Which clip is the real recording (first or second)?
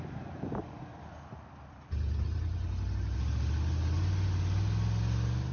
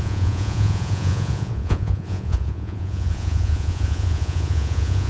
first